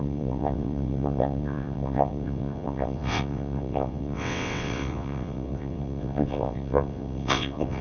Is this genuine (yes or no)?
no